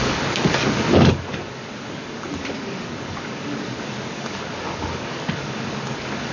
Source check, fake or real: fake